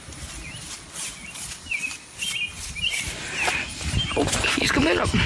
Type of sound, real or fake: real